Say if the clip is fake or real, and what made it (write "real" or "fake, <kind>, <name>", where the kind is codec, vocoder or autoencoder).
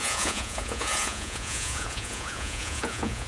fake, vocoder, Vocos